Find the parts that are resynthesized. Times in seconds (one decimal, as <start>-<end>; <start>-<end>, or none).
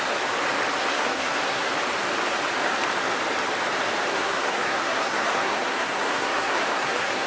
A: 0.8-1.7; 4.1-7.3